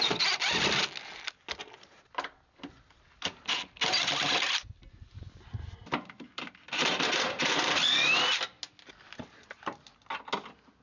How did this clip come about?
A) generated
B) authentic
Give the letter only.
B